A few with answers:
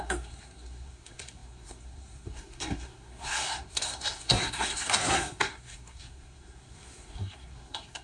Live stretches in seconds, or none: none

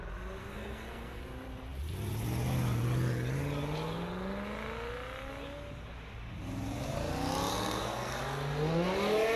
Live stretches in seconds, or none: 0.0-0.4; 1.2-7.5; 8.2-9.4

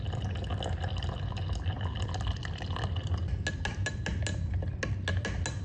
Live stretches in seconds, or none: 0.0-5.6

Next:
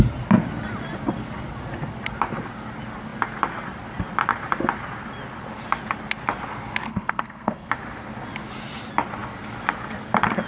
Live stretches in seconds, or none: 0.0-6.9; 7.7-10.5

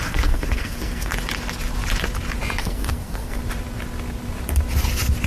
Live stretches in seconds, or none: 1.1-2.6; 3.4-5.3

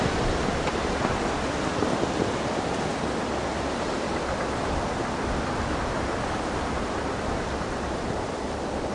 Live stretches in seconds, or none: 0.0-8.9

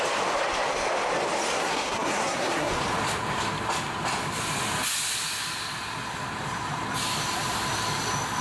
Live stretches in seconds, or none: 0.0-1.6; 2.7-8.4

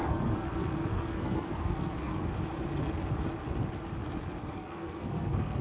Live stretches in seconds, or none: 2.1-4.4